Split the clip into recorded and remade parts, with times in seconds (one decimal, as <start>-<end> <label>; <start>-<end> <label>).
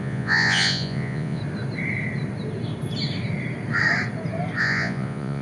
0.0-1.4 remade; 1.4-4.6 recorded; 4.6-5.4 remade